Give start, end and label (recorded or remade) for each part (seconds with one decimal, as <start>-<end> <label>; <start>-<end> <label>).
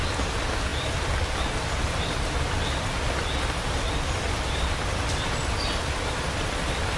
0.0-7.0 recorded